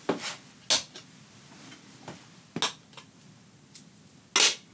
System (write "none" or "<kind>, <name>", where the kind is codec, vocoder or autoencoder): none